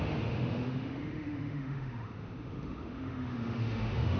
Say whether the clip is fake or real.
fake